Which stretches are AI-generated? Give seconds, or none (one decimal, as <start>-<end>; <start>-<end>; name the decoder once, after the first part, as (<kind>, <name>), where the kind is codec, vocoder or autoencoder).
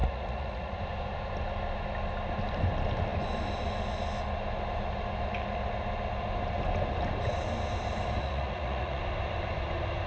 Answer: 0.0-0.8 (vocoder, Vocos); 8.2-9.0